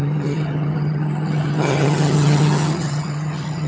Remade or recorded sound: remade